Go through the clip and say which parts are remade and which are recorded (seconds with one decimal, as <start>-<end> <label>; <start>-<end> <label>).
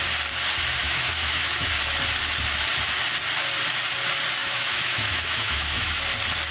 0.0-0.8 recorded; 0.8-1.7 remade; 1.7-4.4 recorded; 4.4-6.0 remade; 6.0-6.5 recorded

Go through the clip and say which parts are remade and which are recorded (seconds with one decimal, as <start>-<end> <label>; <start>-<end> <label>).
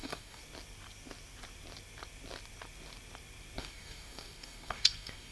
0.0-0.4 remade; 0.4-3.6 recorded; 3.6-5.3 remade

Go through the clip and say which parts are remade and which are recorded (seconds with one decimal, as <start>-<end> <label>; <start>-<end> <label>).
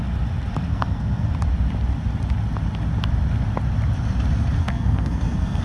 0.0-0.7 recorded; 0.7-1.3 remade; 1.3-4.6 recorded; 4.6-5.6 remade